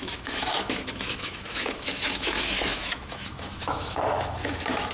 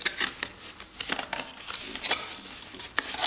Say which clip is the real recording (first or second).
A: second